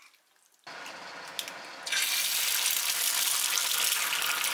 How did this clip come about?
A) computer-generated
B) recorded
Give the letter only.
B